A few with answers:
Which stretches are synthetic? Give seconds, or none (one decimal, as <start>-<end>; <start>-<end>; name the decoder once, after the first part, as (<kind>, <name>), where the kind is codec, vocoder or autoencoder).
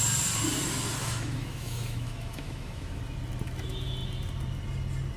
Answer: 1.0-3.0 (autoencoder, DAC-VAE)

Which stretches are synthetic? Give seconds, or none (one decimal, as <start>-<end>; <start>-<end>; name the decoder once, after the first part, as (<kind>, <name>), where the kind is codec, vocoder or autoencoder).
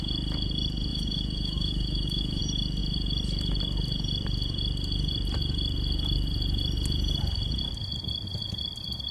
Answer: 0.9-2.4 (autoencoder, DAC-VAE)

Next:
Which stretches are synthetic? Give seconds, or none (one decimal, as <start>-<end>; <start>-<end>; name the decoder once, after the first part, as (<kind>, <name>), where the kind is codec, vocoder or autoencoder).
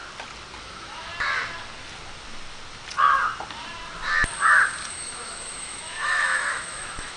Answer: 0.6-1.1 (autoencoder, DAC-VAE); 4.9-7.2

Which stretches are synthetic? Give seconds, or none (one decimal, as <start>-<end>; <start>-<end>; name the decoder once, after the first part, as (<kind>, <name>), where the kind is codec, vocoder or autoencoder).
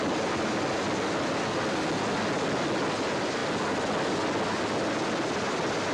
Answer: none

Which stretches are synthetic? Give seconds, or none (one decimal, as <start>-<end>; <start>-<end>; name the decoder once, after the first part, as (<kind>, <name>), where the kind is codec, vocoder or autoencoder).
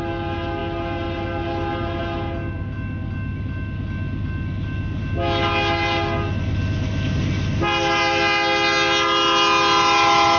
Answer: none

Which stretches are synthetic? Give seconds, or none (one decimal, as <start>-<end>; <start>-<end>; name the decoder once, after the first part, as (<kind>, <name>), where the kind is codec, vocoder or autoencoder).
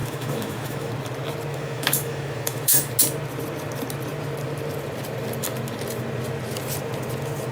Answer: 0.0-0.9 (autoencoder, DAC-VAE); 1.5-2.9